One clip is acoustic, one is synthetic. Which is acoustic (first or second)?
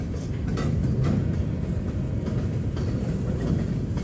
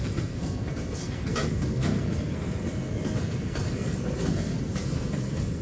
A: first